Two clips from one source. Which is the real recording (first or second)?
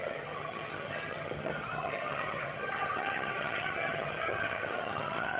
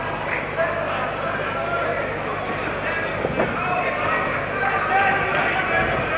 second